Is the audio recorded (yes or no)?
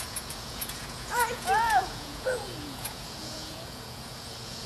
no